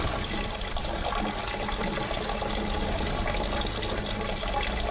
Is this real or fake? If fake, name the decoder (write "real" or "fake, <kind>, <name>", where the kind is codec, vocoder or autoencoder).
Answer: real